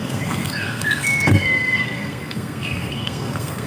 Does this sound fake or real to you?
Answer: fake